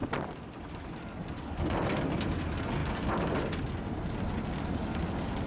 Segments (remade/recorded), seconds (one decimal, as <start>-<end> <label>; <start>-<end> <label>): 0.0-5.5 recorded